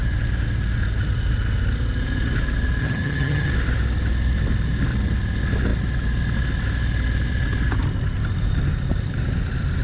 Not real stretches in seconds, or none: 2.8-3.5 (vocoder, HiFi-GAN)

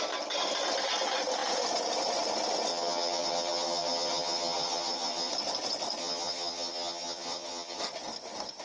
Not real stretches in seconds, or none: 2.7-5.3 (vocoder, HiFi-GAN); 6.0-7.8

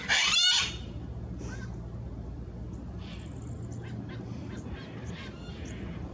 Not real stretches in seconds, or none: 0.0-6.1 (vocoder, BigVGAN v2)

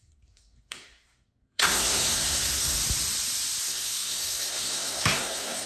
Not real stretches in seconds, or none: 0.0-2.8 (codec, SNAC); 3.6-5.7

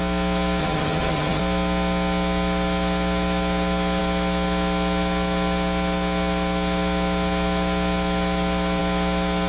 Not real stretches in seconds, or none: 0.6-1.4 (vocoder, HiFi-GAN)

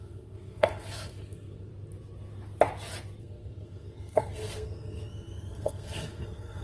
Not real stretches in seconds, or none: 0.0-1.7 (codec, SNAC); 3.2-6.6